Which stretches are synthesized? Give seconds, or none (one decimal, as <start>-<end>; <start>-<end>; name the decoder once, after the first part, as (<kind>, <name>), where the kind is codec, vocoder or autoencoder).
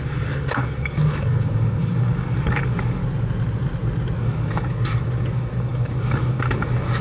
0.0-3.0 (codec, DAC); 4.2-7.0